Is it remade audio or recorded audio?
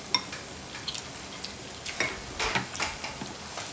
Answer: recorded